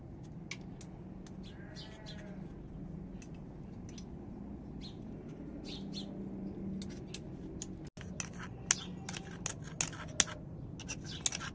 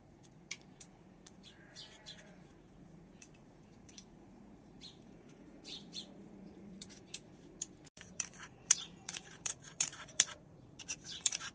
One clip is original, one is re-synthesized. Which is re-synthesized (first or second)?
second